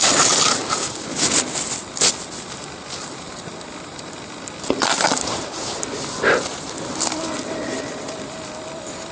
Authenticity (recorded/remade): remade